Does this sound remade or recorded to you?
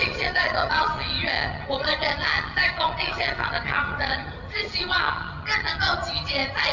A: remade